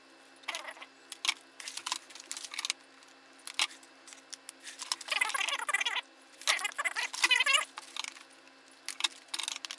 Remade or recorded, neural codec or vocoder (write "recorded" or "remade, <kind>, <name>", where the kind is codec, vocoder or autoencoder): recorded